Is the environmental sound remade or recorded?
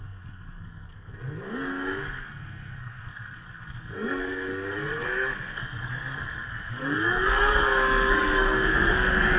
remade